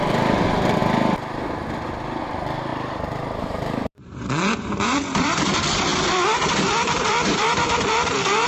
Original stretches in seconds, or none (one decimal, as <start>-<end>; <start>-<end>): 0.8-2.2; 5.9-6.6